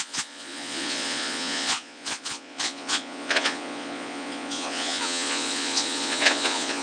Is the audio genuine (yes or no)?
no